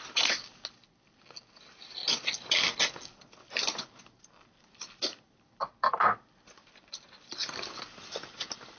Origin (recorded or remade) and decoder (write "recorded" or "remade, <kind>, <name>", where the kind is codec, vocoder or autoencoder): recorded